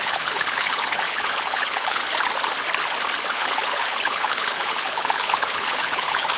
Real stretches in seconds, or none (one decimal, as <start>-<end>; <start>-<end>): 2.0-3.3